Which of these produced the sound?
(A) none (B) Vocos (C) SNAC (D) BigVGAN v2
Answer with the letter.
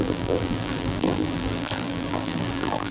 D